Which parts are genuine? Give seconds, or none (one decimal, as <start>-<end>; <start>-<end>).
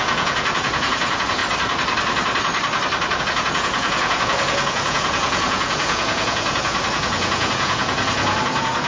1.4-3.2